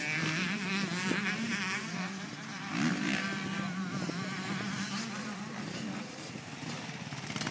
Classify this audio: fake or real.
fake